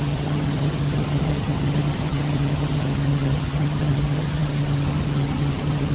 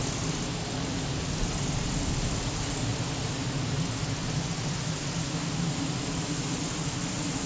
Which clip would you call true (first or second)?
second